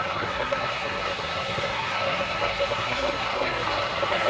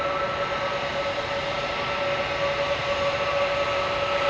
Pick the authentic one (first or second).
second